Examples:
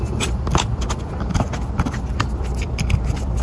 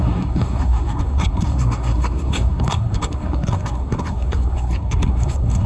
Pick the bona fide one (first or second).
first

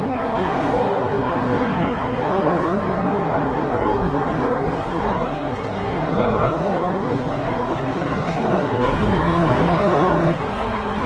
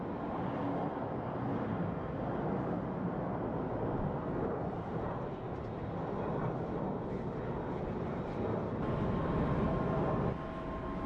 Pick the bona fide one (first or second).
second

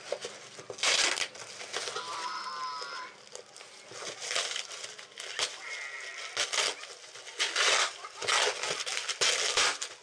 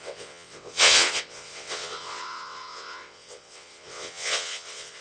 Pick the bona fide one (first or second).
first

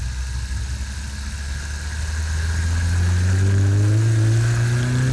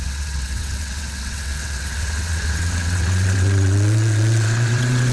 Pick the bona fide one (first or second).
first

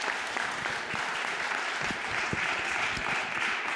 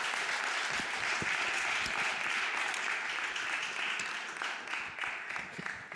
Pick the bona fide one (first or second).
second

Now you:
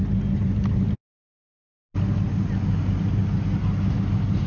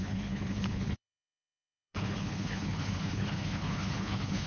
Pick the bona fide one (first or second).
first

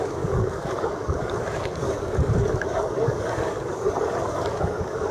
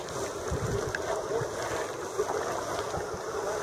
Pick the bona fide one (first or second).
second